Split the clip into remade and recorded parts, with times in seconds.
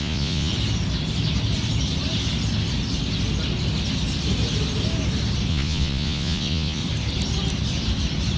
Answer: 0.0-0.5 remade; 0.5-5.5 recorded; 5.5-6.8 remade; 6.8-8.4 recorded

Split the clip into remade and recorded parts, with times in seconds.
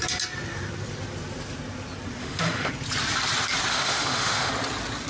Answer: 0.0-2.2 recorded; 2.2-2.7 remade; 2.7-3.7 recorded; 3.7-4.5 remade; 4.5-5.1 recorded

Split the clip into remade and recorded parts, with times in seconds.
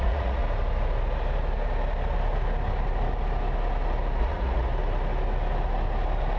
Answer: 0.0-0.4 remade; 0.4-4.2 recorded; 4.2-4.7 remade; 4.7-6.4 recorded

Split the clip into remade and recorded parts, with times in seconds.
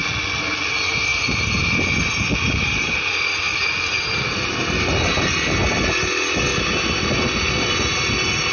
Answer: 0.0-1.1 recorded; 1.1-4.5 remade; 4.5-8.5 recorded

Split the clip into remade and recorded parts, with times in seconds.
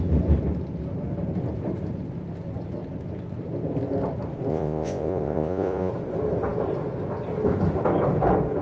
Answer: 0.0-4.5 recorded; 4.5-5.9 remade; 5.9-8.6 recorded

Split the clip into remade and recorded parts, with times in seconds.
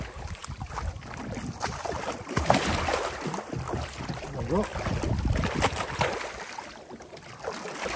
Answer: 0.0-8.0 recorded